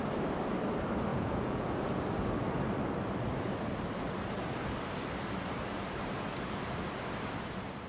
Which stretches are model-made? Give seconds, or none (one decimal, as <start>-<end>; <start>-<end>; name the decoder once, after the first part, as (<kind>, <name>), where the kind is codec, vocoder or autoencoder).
1.1-1.7 (vocoder, Vocos)